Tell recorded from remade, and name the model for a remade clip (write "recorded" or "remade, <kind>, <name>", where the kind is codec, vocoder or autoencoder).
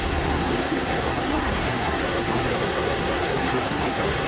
remade, codec, SNAC